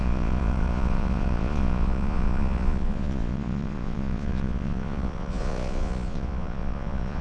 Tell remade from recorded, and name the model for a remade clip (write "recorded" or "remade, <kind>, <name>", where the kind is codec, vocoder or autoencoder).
remade, vocoder, Vocos